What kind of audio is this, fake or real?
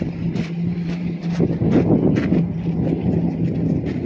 real